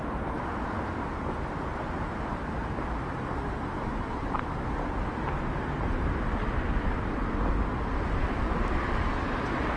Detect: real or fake real